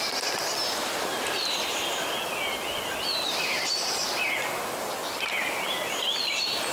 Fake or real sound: real